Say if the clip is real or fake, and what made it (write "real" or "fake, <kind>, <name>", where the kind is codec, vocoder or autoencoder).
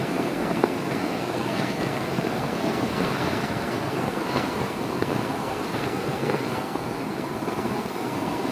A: fake, codec, SNAC